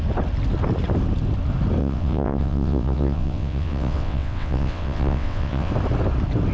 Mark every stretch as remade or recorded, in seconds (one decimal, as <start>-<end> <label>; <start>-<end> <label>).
0.0-1.8 recorded; 1.8-5.7 remade; 5.7-6.5 recorded